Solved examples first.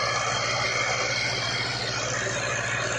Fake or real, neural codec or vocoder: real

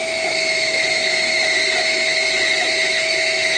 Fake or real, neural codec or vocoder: fake, autoencoder, DAC-VAE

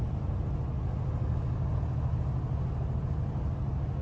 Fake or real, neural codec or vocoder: real